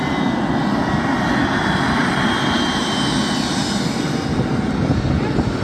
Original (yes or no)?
yes